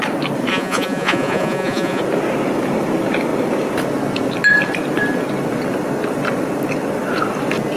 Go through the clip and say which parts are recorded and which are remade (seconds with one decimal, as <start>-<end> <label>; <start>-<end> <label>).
0.0-0.5 recorded; 0.5-2.0 remade; 2.0-7.8 recorded